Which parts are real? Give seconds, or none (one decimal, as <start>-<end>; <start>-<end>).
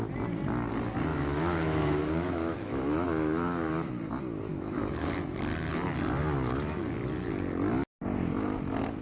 0.0-1.1; 3.9-4.5; 5.1-9.0